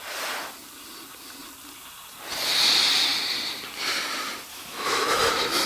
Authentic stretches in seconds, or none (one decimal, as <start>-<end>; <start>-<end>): 0.0-4.5; 5.2-5.7